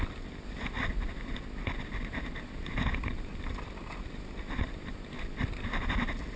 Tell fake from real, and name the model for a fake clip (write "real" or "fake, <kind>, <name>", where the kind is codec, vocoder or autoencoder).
real